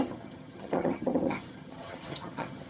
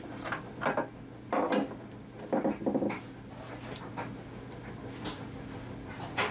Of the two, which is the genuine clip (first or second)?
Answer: second